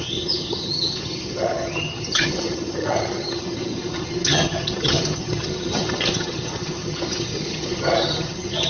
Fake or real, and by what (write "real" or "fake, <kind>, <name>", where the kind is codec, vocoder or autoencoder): fake, vocoder, HiFi-GAN